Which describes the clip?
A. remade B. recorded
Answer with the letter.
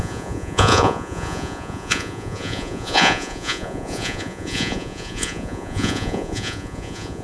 A